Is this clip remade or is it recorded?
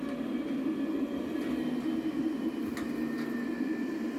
recorded